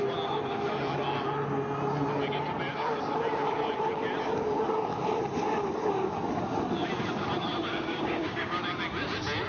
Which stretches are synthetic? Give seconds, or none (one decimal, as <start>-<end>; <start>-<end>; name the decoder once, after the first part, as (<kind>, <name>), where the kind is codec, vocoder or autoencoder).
7.7-8.6 (codec, DAC)